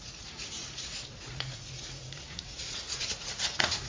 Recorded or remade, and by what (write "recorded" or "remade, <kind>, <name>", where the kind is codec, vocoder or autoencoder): remade, vocoder, Vocos